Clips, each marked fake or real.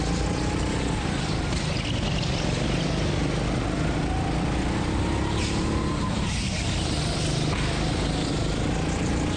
real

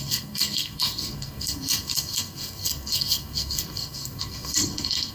fake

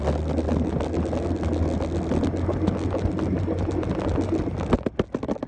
real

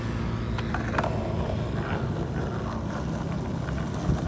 real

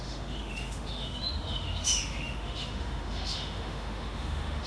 fake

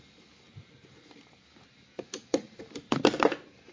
fake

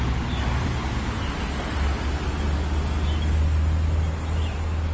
real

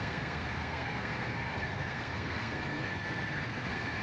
fake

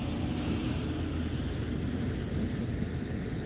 real